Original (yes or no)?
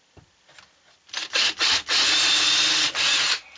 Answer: yes